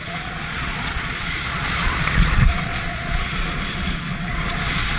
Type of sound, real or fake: fake